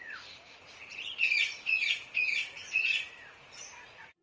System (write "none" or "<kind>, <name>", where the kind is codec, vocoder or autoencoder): vocoder, Vocos